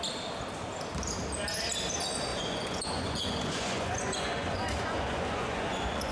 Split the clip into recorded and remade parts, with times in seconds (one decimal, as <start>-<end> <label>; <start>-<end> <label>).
0.0-2.3 recorded; 2.3-6.1 remade